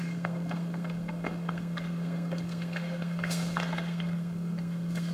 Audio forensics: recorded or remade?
remade